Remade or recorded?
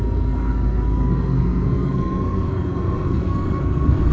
remade